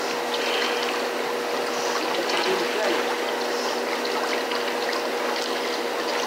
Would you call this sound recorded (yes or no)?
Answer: yes